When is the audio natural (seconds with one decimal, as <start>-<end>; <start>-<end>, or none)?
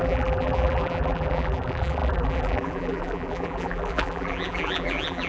none